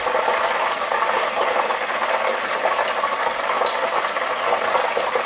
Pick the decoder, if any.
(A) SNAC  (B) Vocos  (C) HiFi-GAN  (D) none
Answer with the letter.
D